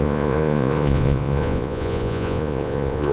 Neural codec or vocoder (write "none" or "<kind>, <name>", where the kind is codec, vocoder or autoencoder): vocoder, Vocos